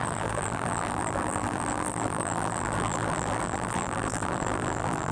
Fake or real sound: fake